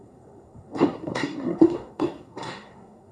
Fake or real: fake